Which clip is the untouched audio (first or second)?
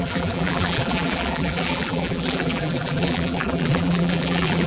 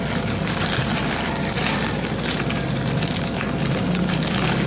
second